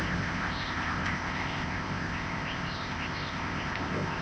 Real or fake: fake